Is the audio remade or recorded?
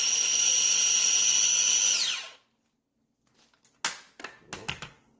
recorded